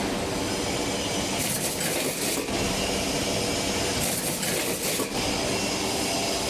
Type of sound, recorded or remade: recorded